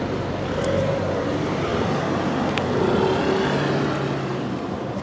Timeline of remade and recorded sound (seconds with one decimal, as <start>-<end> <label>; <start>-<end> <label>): 0.0-5.0 recorded